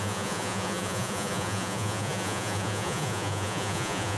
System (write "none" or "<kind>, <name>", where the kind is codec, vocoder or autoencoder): vocoder, Vocos